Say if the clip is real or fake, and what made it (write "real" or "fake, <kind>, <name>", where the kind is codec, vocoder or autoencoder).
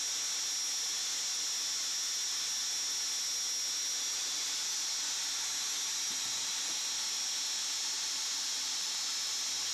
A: real